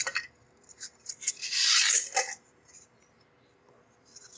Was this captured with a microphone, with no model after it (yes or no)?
yes